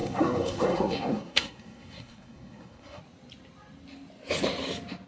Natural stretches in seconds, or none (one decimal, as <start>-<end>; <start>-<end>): 3.0-5.1